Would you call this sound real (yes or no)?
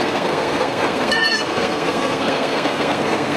no